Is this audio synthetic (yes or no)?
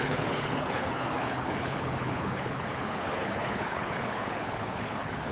yes